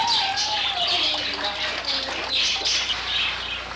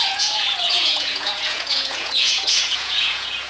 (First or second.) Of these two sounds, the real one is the first